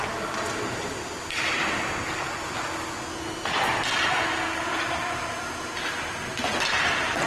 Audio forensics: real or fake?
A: real